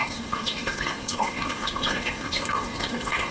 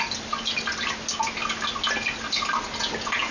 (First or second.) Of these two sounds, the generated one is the first